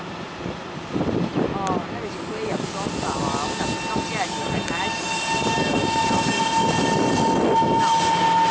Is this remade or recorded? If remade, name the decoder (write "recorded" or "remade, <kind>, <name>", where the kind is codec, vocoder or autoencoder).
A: recorded